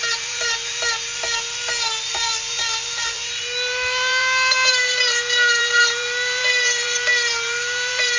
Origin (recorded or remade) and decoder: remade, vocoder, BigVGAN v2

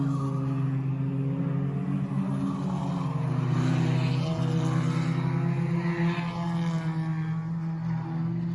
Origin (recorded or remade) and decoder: recorded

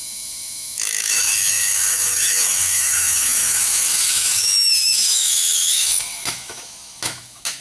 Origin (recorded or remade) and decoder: remade, autoencoder, DAC-VAE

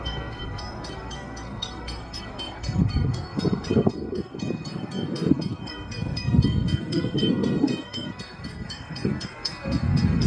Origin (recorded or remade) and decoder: remade, codec, SNAC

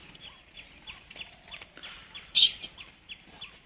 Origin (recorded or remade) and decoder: recorded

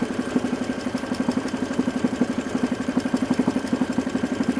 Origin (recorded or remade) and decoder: remade, vocoder, BigVGAN v2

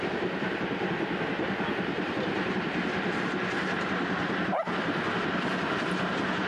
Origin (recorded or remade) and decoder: recorded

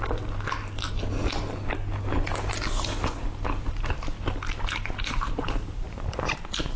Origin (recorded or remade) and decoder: recorded